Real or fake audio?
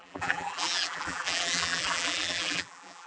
fake